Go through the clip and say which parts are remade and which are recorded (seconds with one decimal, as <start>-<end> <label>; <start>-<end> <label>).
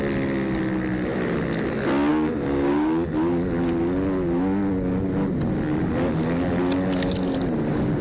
0.0-2.1 recorded; 2.1-3.1 remade; 3.1-8.0 recorded